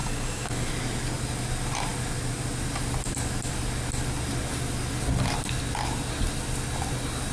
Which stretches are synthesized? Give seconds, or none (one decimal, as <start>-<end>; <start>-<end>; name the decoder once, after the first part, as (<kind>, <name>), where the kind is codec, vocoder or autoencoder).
0.0-0.7 (codec, DAC)